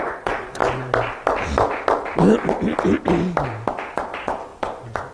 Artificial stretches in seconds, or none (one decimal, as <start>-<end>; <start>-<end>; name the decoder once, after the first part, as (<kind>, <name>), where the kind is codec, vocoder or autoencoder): 0.0-0.6 (vocoder, Vocos); 3.7-5.1